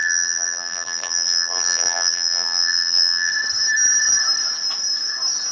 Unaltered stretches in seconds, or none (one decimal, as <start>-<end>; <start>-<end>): 3.3-5.5